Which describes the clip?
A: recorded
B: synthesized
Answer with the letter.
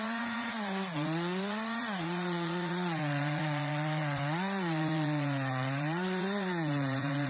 B